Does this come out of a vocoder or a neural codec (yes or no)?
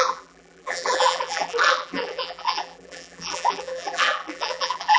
yes